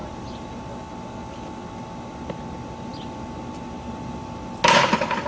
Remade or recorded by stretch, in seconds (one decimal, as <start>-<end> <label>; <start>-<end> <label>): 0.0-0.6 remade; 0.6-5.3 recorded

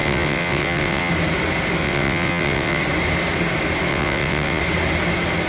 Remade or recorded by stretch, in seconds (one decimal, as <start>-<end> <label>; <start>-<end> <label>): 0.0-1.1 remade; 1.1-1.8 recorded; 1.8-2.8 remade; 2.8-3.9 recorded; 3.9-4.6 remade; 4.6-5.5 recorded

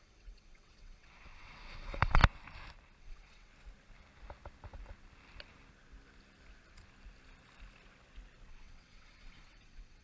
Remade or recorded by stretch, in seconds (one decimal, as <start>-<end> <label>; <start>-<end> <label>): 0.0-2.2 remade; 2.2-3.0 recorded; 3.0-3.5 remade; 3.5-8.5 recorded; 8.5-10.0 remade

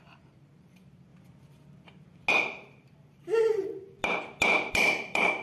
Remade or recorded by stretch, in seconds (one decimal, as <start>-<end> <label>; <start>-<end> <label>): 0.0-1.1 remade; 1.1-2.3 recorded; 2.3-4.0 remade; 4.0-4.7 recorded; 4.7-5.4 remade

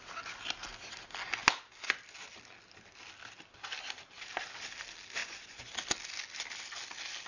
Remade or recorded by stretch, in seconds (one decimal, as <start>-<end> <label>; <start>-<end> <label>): 0.0-5.2 recorded; 5.2-5.7 remade; 5.7-7.3 recorded

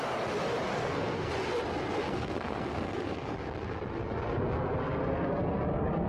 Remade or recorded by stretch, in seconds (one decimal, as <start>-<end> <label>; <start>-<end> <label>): 0.0-0.7 recorded; 0.7-1.3 remade; 1.3-2.0 recorded; 2.0-3.3 remade; 3.3-6.1 recorded

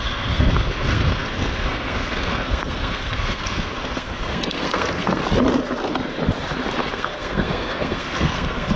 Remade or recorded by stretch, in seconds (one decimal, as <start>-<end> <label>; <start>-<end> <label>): 0.0-5.2 remade; 5.2-6.9 recorded; 6.9-8.8 remade